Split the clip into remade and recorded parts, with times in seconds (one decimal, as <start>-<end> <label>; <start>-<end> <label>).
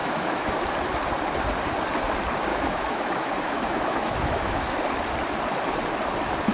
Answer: 0.0-0.5 remade; 0.5-2.5 recorded; 2.5-4.8 remade; 4.8-6.5 recorded